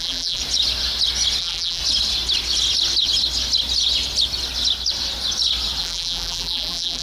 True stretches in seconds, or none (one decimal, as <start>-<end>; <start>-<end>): 0.4-1.4; 1.8-5.8